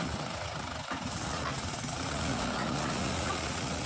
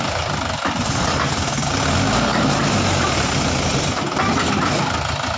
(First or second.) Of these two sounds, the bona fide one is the second